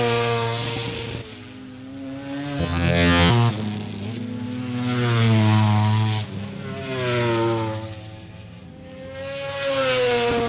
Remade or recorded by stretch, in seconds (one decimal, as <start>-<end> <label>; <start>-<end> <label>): 0.0-2.6 recorded; 2.6-3.3 remade; 3.3-10.5 recorded